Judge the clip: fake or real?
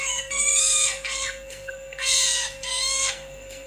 fake